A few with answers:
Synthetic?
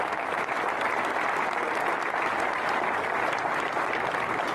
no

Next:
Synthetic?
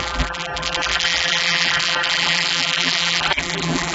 yes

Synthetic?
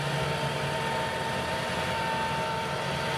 no